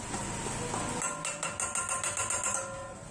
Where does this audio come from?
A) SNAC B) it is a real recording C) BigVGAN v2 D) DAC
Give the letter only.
B